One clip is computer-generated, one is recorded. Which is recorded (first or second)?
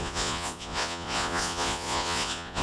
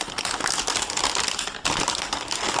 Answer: second